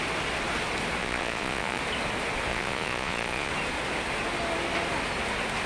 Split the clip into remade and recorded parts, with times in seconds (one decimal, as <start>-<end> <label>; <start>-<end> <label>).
0.0-1.0 recorded; 1.0-1.8 remade; 1.8-2.5 recorded; 2.5-3.5 remade; 3.5-5.7 recorded